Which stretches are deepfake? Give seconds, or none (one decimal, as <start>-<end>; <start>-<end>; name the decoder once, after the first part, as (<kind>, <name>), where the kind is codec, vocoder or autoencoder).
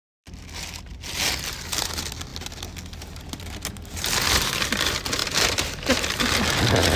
5.2-5.9 (vocoder, BigVGAN v2)